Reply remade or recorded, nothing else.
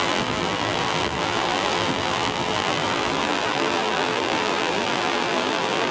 remade